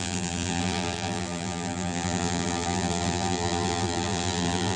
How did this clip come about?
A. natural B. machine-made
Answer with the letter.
B